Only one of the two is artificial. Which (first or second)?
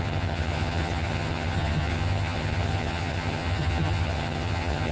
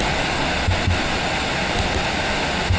first